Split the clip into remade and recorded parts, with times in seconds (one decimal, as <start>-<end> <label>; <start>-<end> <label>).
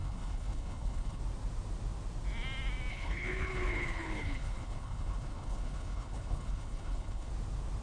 0.0-1.2 remade; 1.2-2.9 recorded; 2.9-7.3 remade; 7.3-7.8 recorded